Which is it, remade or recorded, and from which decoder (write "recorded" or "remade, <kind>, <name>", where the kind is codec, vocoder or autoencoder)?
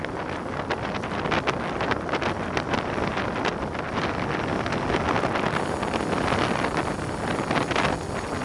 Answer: recorded